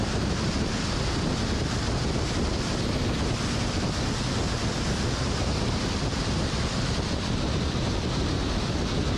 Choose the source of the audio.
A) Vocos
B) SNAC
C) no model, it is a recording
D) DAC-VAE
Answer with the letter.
C